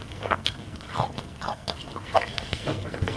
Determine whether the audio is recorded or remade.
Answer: remade